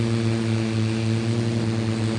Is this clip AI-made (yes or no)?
no